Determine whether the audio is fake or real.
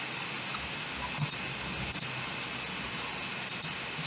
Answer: real